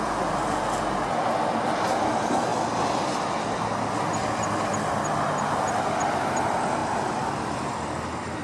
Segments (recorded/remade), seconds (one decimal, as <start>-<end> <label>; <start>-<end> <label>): 0.0-8.4 recorded